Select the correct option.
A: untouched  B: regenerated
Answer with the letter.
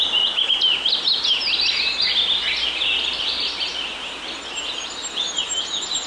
A